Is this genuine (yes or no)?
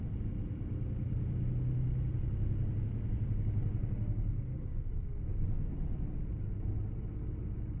yes